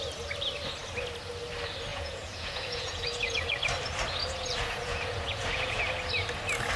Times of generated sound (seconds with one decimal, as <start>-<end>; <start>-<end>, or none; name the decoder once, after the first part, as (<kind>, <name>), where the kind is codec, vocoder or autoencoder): 1.9-3.6 (vocoder, Vocos); 4.2-5.8